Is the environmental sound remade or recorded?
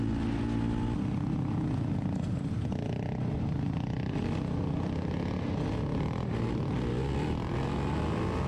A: recorded